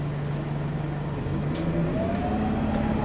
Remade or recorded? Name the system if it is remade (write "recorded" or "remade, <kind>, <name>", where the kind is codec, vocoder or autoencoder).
recorded